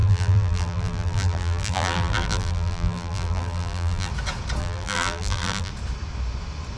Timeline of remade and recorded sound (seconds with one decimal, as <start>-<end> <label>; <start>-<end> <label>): 0.0-4.1 remade; 4.1-4.6 recorded; 4.6-5.7 remade; 5.7-6.8 recorded